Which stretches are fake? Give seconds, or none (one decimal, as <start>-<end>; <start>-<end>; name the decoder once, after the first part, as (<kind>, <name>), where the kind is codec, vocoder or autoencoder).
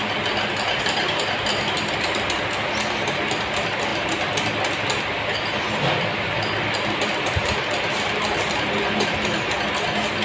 none